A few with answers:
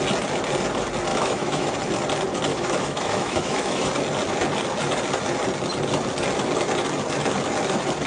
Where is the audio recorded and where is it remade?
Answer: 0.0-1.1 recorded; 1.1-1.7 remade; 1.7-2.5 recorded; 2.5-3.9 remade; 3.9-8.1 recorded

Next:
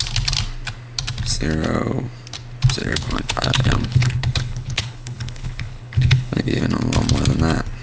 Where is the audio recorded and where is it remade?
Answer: 0.0-2.8 recorded; 2.8-6.6 remade; 6.6-7.8 recorded

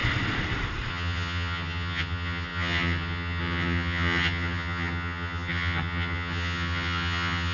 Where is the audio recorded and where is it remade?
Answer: 0.0-0.9 recorded; 0.9-7.5 remade